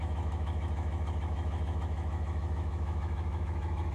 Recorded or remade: remade